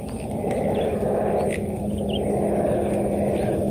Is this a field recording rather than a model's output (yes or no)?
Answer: yes